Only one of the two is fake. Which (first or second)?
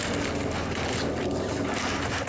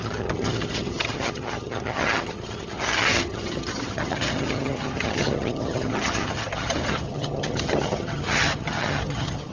second